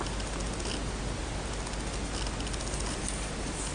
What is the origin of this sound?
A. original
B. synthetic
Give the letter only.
A